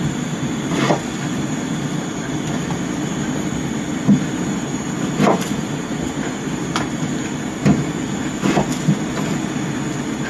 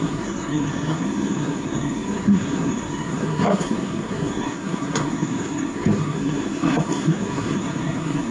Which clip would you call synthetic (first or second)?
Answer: second